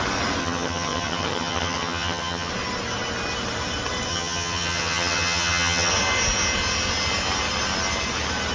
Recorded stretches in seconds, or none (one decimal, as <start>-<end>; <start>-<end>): 0.0-0.4; 2.5-4.1; 5.9-8.5